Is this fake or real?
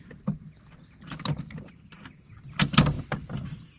real